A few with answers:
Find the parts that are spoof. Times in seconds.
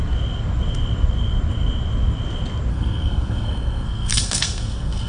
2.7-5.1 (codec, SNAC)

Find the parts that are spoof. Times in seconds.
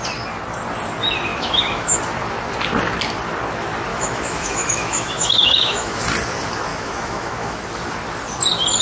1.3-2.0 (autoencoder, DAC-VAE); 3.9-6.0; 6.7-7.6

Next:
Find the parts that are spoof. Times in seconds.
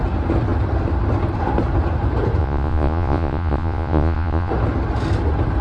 2.4-4.5 (vocoder, Vocos)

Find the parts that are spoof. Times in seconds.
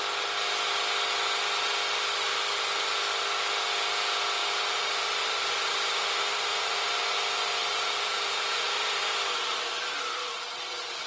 4.4-7.0 (vocoder, BigVGAN v2); 7.6-9.0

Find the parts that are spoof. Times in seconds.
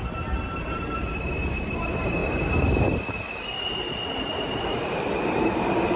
0.0-6.0 (vocoder, BigVGAN v2)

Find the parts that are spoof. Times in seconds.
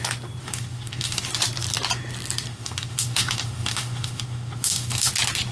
0.4-1.2 (autoencoder, DAC-VAE); 2.5-5.1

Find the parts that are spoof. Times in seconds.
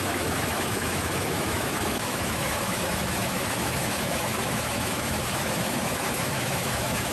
0.0-7.1 (autoencoder, DAC-VAE)